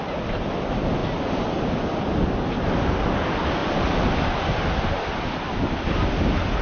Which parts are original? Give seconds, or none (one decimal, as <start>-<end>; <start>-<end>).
0.0-6.6